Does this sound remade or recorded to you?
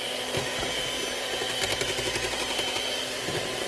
recorded